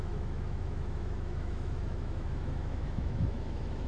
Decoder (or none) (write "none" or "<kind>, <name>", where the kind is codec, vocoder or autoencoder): autoencoder, DAC-VAE